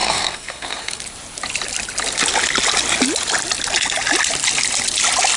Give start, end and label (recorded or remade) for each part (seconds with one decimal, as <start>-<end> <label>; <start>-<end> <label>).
0.0-1.0 remade; 1.0-5.4 recorded